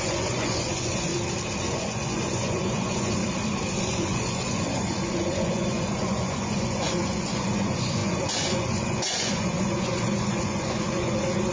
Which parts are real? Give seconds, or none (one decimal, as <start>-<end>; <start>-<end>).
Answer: 1.1-1.6; 3.2-3.8